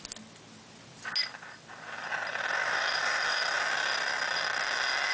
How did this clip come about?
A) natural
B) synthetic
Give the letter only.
A